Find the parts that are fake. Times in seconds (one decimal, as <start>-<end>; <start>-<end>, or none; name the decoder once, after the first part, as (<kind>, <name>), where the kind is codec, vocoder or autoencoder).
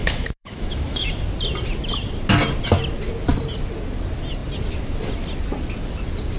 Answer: 0.0-1.0 (autoencoder, DAC-VAE)